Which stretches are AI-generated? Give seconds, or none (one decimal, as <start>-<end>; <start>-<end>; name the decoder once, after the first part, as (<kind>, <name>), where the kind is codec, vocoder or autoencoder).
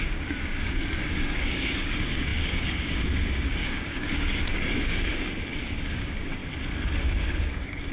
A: 0.0-6.4 (codec, DAC); 7.0-7.9